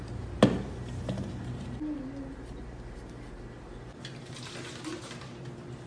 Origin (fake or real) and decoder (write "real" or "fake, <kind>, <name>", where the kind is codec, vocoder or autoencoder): real